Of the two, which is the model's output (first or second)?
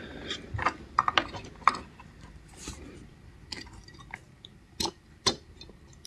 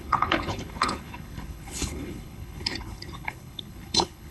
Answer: second